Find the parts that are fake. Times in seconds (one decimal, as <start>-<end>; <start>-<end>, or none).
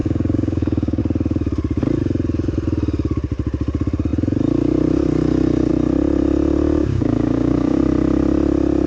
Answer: 0.0-1.0; 6.8-7.8